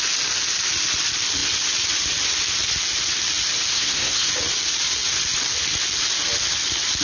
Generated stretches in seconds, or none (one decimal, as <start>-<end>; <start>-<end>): 3.7-4.3